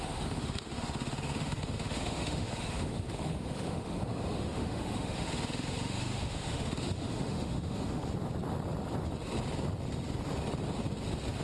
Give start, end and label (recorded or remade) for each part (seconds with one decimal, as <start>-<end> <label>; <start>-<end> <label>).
0.0-8.0 remade; 8.0-11.4 recorded